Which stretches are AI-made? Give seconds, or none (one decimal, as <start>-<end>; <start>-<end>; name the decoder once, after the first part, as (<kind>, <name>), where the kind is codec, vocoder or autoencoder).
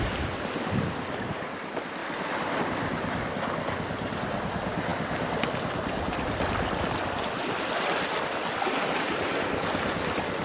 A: 2.0-2.6 (vocoder, BigVGAN v2)